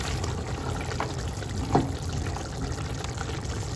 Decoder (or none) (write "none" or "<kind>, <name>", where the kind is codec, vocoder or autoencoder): none